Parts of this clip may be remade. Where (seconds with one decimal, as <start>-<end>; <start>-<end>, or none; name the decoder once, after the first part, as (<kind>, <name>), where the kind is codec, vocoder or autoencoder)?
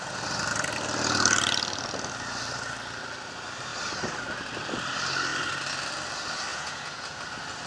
6.5-7.2 (vocoder, Vocos)